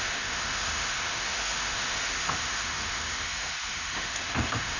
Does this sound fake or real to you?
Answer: fake